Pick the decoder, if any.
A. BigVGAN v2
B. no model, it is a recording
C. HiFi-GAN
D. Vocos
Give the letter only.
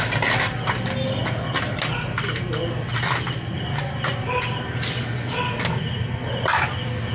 B